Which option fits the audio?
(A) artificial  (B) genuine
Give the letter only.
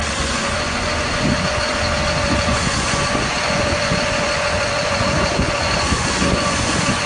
A